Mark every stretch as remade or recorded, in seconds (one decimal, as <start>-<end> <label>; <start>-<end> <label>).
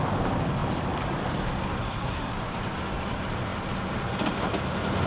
0.0-1.8 recorded; 1.8-2.3 remade; 2.3-5.1 recorded